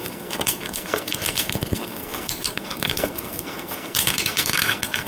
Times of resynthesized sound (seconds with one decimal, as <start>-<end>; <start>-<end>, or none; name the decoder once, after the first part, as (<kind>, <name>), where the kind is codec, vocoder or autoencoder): 0.0-5.1 (codec, SNAC)